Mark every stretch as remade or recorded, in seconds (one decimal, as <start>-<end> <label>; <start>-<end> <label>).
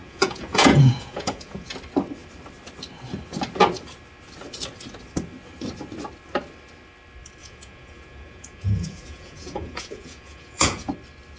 0.0-1.7 remade; 1.7-7.4 recorded; 7.4-10.9 remade; 10.9-11.4 recorded